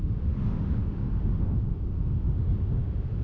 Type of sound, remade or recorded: remade